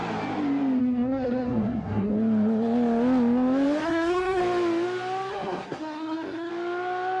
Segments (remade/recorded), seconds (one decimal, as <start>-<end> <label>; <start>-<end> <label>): 0.0-0.8 recorded; 0.8-2.1 remade; 2.1-3.8 recorded; 3.8-4.4 remade; 4.4-5.3 recorded; 5.3-6.5 remade; 6.5-7.2 recorded